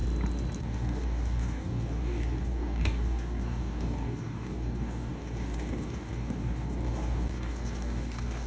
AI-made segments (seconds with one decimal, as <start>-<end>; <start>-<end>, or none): 0.6-8.5